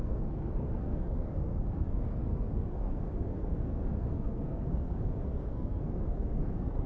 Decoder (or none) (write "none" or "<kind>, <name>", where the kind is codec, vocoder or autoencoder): codec, SNAC